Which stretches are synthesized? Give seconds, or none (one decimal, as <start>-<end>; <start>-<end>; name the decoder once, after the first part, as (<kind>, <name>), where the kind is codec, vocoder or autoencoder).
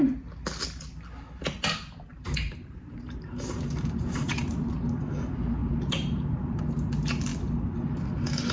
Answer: 2.1-4.4 (vocoder, BigVGAN v2); 5.6-6.6